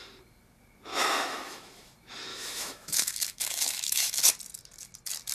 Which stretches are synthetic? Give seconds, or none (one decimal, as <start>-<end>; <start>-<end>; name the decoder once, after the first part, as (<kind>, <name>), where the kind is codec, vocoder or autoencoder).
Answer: 0.9-1.9 (autoencoder, DAC-VAE); 2.3-4.2